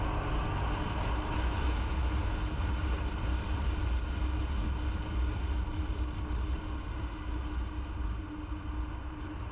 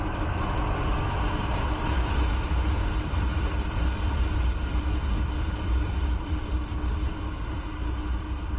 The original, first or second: first